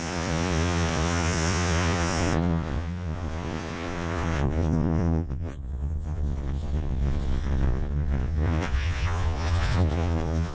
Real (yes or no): no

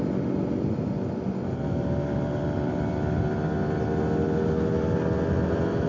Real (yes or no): yes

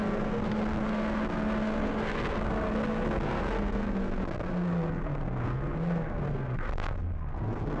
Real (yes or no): no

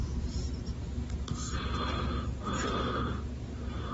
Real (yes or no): yes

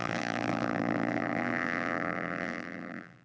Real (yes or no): no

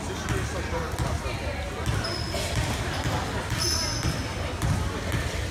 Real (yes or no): yes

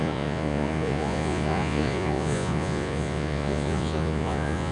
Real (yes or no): no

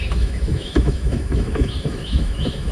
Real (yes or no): no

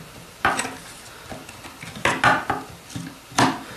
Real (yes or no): yes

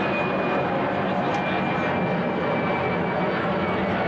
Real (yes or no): yes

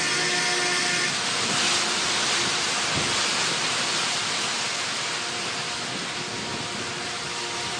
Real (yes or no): yes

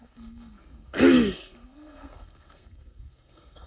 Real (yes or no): no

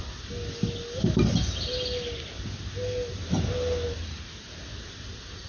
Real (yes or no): yes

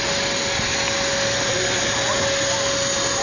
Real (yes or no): yes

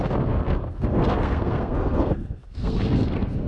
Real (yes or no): no